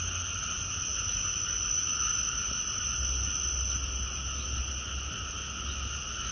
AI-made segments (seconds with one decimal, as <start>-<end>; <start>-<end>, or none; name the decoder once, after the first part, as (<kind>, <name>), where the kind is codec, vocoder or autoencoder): none